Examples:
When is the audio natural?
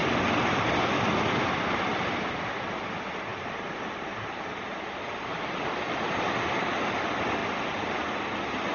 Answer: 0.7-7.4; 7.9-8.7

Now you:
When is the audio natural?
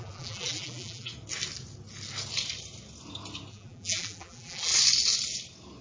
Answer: 1.1-3.5; 4.7-5.8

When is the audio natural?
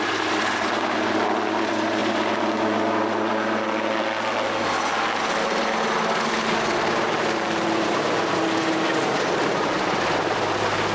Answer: 0.0-10.9